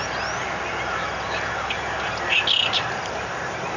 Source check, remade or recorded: recorded